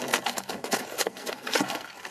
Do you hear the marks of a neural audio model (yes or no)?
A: yes